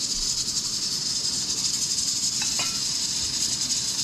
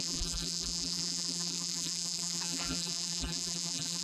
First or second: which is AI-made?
second